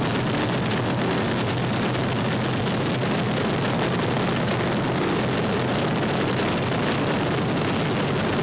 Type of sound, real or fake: real